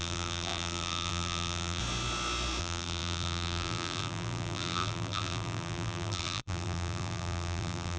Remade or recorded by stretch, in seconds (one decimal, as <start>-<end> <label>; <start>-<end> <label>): 0.0-1.8 remade; 1.8-2.6 recorded; 2.6-8.0 remade